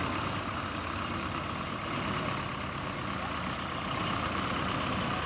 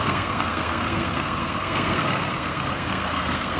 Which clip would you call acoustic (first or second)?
first